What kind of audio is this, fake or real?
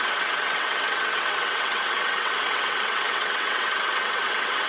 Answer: fake